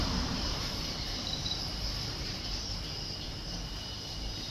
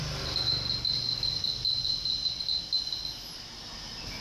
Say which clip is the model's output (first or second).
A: first